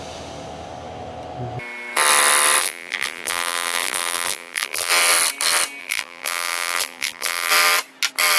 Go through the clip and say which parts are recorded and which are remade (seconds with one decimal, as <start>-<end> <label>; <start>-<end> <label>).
0.0-2.6 recorded; 2.6-4.9 remade; 4.9-5.8 recorded; 5.8-7.5 remade; 7.5-8.4 recorded

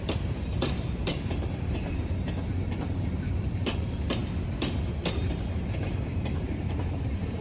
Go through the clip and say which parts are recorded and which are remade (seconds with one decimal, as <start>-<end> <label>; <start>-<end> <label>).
0.0-4.2 remade; 4.2-5.1 recorded; 5.1-7.4 remade

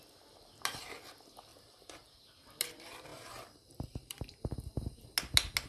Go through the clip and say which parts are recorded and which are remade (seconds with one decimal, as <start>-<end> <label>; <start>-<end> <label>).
0.0-1.5 recorded; 1.5-2.1 remade; 2.1-3.1 recorded; 3.1-4.2 remade; 4.2-5.7 recorded

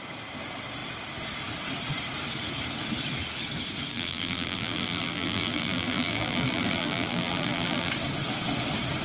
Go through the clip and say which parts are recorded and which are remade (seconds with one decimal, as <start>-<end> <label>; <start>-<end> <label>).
0.0-3.9 recorded; 3.9-7.9 remade; 7.9-9.0 recorded